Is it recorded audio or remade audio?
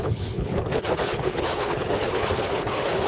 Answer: remade